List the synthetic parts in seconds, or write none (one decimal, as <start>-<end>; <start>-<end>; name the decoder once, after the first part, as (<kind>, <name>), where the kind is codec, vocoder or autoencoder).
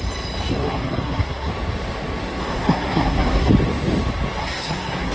0.5-1.5 (codec, SNAC); 2.4-3.5; 4.4-5.1